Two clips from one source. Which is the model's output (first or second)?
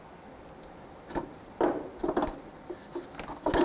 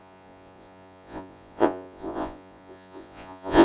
second